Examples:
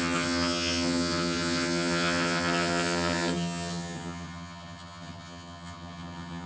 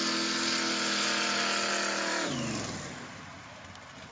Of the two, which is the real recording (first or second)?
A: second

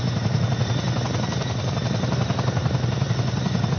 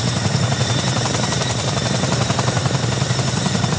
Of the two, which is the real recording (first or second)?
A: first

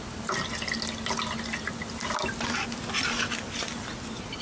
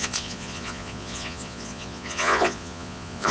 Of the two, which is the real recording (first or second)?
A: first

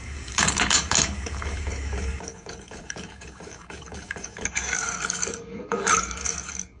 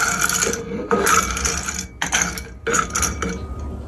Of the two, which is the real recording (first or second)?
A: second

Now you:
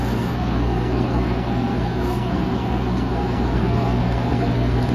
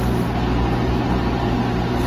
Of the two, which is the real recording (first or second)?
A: second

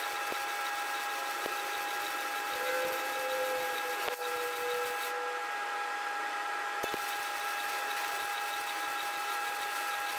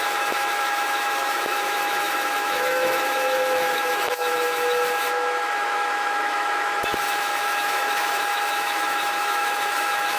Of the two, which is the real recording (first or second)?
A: first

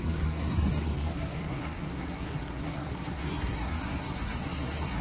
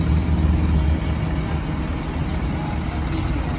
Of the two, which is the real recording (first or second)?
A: second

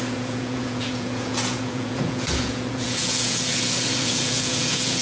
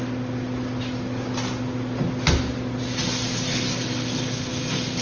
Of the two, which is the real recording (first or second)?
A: second